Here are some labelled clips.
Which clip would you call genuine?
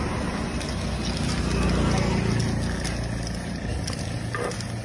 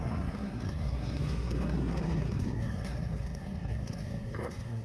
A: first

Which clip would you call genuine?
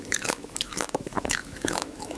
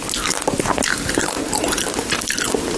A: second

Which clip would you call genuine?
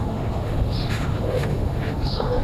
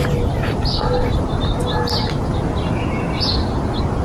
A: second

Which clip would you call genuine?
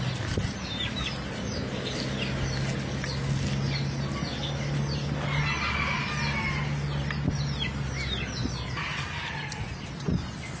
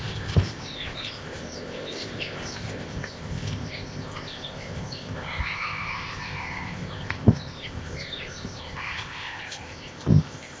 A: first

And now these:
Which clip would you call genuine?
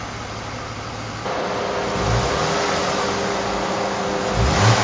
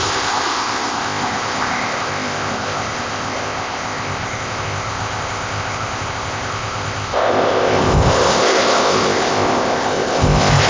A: first